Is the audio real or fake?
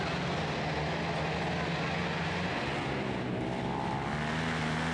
real